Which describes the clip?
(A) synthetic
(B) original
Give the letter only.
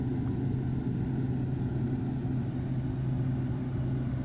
B